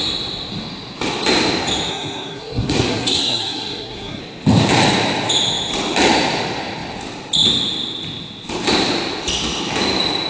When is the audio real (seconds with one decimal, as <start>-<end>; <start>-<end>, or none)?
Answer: 0.0-1.9; 4.2-10.3